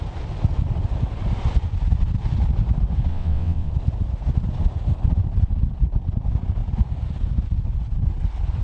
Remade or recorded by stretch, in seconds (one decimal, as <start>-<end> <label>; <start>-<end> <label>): 0.0-3.1 recorded; 3.1-3.7 remade; 3.7-8.6 recorded